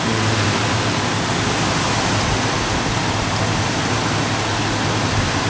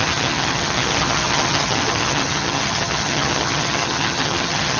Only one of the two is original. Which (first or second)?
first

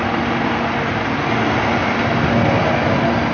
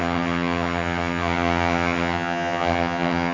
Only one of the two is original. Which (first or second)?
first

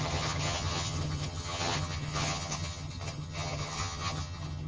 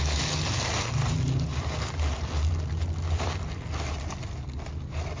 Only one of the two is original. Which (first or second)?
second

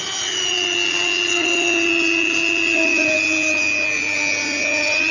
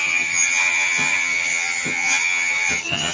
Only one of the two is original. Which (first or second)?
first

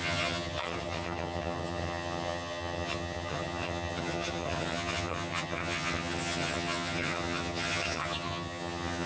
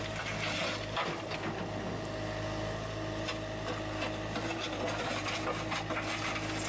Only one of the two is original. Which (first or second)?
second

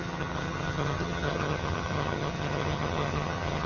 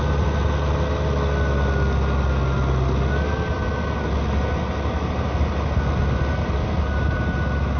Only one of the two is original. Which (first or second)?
second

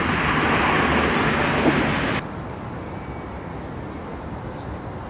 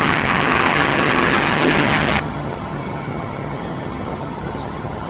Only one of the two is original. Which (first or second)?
first